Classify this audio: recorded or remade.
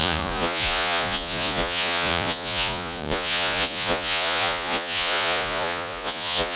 remade